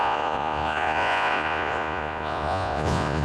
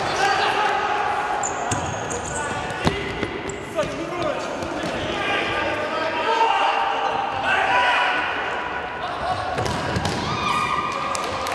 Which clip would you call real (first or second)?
second